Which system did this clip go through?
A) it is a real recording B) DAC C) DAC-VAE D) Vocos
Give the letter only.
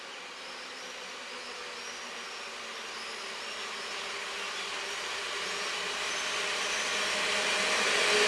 A